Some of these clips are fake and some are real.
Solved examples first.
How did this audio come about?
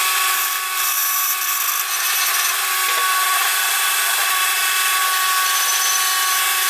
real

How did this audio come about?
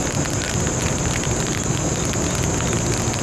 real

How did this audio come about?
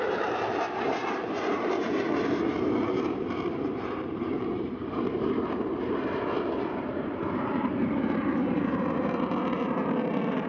fake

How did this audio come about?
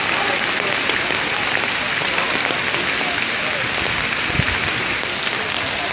real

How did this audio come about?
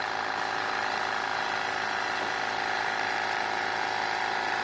real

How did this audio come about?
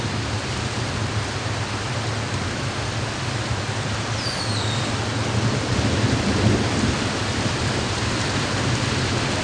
fake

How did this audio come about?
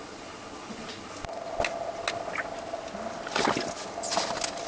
real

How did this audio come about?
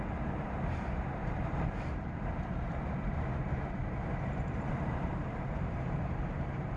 fake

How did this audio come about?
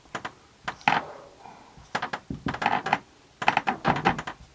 real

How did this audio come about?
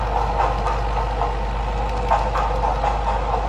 real